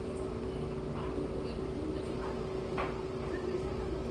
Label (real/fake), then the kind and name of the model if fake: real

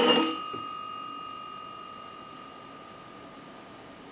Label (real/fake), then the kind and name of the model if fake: real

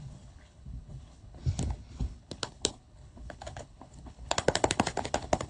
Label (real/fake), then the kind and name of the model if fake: fake, codec, HILCodec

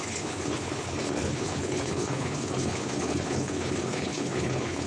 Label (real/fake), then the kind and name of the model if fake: fake, codec, HILCodec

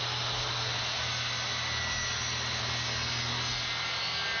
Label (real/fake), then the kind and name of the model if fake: real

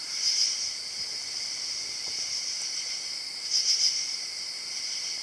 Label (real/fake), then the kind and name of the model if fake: real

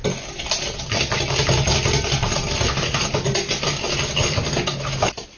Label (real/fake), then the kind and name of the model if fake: real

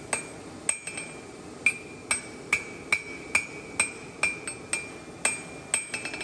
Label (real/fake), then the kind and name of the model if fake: real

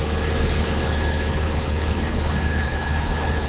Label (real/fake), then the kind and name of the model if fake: fake, codec, HILCodec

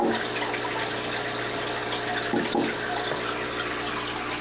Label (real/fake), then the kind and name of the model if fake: real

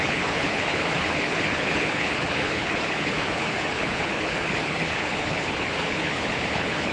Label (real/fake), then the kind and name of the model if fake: fake, codec, HILCodec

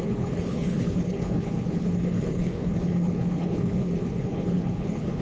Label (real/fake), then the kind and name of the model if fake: fake, codec, HILCodec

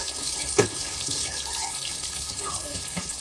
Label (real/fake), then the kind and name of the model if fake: fake, codec, HILCodec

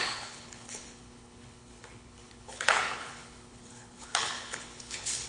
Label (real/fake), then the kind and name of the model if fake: fake, codec, HILCodec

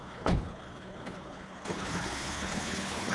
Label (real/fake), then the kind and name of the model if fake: fake, codec, HILCodec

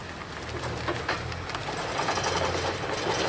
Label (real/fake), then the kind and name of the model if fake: real